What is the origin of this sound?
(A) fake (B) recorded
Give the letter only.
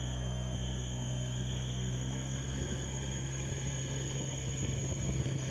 A